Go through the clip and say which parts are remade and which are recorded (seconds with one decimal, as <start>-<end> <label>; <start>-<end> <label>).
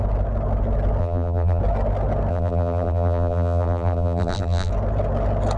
0.0-1.0 recorded; 1.0-1.6 remade; 1.6-2.3 recorded; 2.3-4.7 remade; 4.7-5.6 recorded